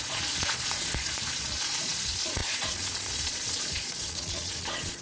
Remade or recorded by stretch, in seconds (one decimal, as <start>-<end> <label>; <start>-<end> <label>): 0.0-5.0 remade